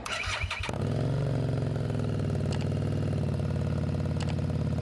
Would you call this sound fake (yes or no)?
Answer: no